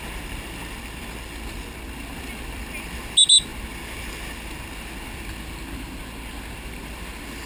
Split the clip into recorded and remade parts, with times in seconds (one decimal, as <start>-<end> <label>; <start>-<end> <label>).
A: 0.0-7.5 recorded

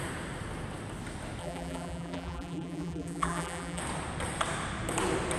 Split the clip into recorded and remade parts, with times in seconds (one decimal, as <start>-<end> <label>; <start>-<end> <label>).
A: 0.0-1.4 recorded; 1.4-3.8 remade; 3.8-5.4 recorded

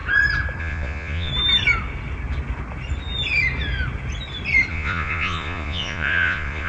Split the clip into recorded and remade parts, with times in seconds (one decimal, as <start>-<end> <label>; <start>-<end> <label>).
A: 0.0-0.6 recorded; 0.6-1.3 remade; 1.3-4.7 recorded; 4.7-6.7 remade

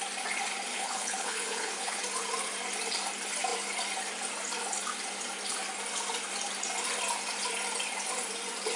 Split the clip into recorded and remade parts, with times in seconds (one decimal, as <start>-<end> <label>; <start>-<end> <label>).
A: 0.0-0.7 recorded; 0.7-2.0 remade; 2.0-8.8 recorded